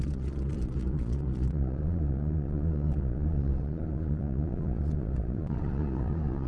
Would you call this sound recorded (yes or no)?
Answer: no